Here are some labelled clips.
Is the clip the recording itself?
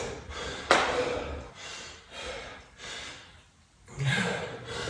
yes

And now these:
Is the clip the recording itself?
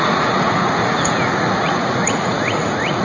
no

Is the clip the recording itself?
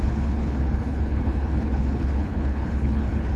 no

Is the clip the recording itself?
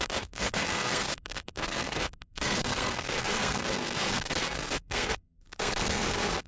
no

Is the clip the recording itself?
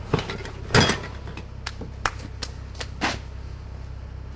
yes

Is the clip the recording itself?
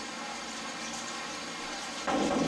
yes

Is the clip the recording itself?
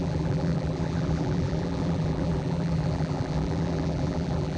no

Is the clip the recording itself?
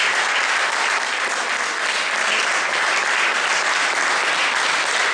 yes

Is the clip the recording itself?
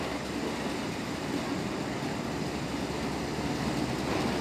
yes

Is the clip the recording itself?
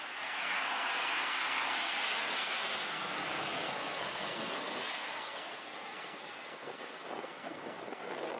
no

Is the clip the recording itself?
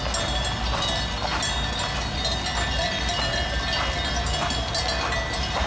yes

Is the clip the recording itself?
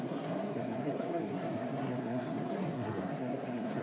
no